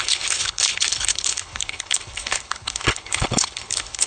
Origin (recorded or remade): remade